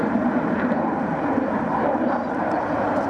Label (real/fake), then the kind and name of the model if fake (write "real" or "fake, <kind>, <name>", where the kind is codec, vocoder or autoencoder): fake, vocoder, BigVGAN v2